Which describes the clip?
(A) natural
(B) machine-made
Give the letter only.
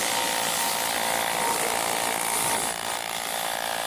A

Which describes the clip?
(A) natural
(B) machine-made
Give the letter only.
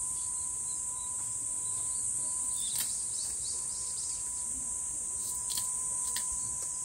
B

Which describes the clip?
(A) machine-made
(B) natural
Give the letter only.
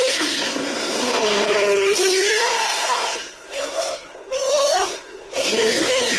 A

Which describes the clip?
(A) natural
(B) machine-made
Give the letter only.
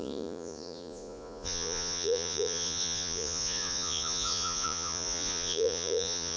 B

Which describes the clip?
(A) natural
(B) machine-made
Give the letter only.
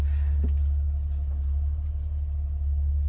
A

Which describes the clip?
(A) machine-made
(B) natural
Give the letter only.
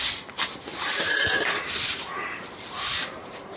A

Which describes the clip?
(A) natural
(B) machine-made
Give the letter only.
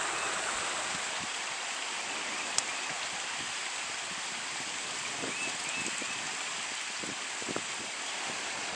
A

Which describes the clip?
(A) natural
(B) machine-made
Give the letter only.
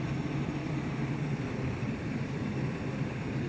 B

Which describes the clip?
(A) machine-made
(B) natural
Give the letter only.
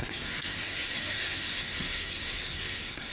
A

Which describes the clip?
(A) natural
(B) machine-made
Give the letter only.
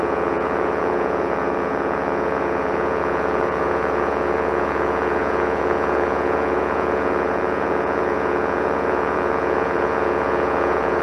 B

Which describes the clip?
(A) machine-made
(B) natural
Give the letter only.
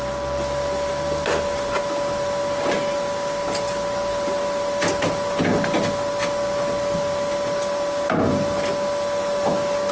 B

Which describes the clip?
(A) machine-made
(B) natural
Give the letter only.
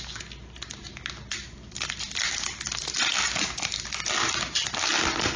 B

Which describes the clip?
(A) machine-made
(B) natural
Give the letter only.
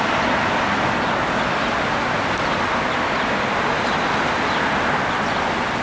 B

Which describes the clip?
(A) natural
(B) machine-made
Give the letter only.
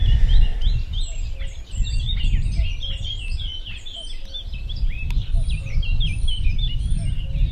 A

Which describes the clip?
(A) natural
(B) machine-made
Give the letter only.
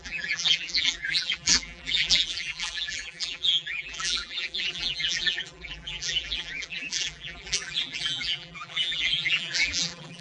B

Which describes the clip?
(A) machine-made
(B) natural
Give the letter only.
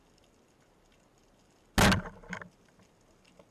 B